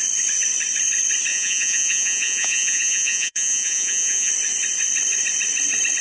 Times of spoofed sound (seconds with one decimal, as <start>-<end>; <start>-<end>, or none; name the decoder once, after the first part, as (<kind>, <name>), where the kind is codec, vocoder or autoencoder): 1.3-4.3 (vocoder, Vocos)